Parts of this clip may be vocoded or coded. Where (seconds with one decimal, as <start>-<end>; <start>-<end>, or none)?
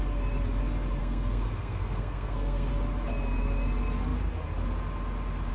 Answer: 1.0-2.7